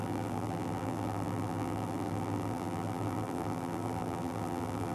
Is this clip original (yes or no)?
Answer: no